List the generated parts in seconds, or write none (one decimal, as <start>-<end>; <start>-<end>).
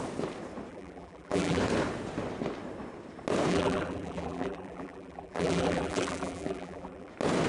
0.7-1.6; 3.5-7.1